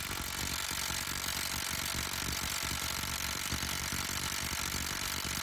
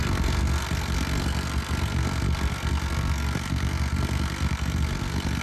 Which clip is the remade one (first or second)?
second